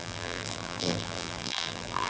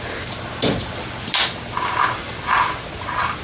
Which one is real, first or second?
second